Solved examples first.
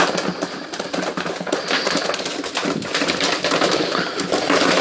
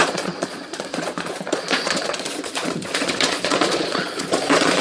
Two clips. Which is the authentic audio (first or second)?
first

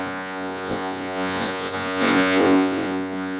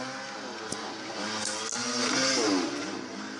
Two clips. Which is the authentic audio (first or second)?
second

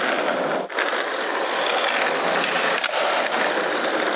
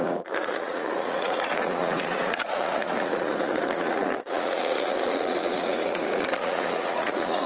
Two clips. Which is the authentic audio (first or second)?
first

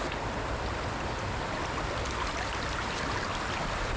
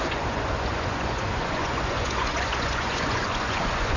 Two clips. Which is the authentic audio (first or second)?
first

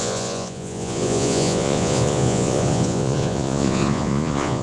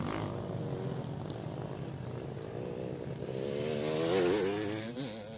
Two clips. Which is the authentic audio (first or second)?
second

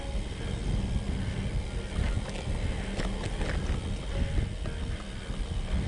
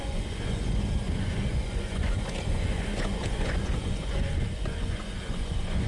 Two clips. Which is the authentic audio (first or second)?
first